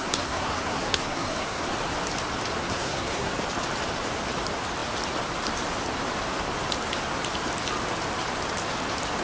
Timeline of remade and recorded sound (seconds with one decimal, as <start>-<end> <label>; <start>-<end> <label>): 0.0-1.6 remade; 1.6-2.6 recorded; 2.6-3.3 remade; 3.3-9.2 recorded